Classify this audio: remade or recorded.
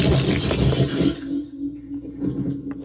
recorded